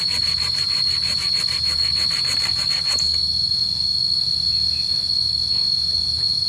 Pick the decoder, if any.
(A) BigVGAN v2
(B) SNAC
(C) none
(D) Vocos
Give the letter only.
C